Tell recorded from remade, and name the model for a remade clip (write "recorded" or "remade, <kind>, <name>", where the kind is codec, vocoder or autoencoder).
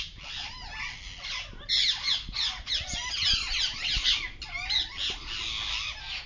recorded